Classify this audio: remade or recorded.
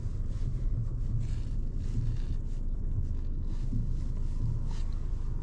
recorded